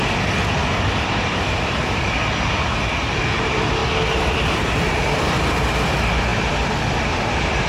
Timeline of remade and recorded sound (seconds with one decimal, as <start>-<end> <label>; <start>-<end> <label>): 0.0-0.6 recorded; 0.6-2.1 remade; 2.1-7.7 recorded